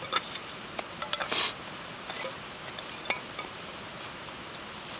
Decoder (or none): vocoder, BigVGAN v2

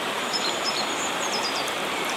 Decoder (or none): vocoder, BigVGAN v2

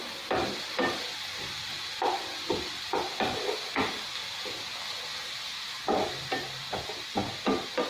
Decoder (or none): none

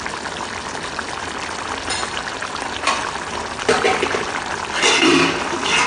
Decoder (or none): vocoder, BigVGAN v2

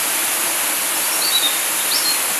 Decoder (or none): none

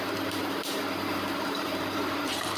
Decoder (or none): vocoder, BigVGAN v2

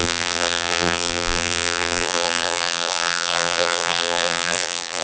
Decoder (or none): vocoder, BigVGAN v2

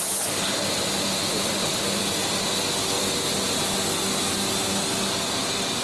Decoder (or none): none